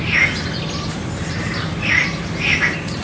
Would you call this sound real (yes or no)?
yes